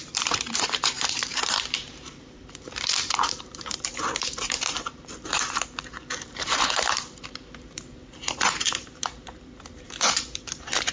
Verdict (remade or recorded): remade